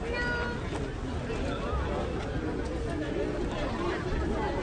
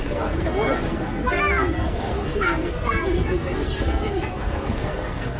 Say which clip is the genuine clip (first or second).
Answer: first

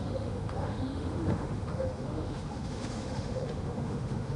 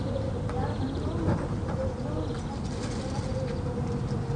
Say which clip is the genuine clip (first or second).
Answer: second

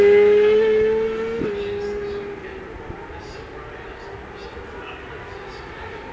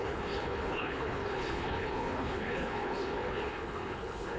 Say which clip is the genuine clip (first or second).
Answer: first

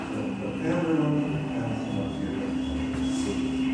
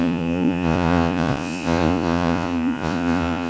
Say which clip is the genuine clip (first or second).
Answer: first